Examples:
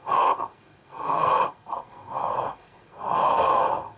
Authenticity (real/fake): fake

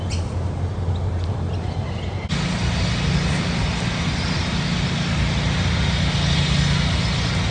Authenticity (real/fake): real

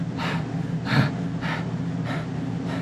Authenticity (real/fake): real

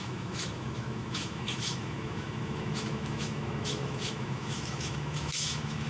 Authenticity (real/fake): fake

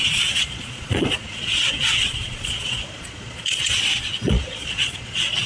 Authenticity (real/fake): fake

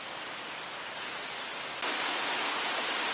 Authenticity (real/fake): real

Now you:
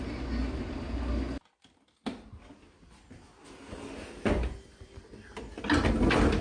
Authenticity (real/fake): real